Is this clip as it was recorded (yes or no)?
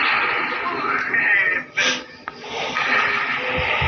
yes